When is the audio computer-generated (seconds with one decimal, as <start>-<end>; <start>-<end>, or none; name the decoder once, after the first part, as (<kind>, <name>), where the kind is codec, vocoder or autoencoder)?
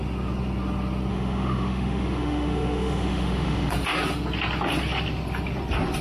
1.1-3.7 (autoencoder, DAC-VAE)